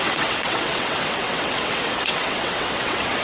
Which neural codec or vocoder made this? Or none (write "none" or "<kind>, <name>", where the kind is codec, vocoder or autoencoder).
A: vocoder, WaveNeXt